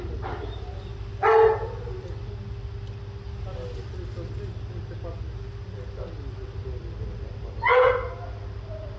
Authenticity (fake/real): real